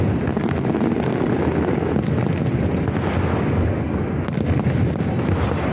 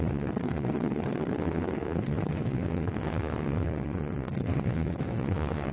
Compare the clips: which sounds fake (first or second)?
second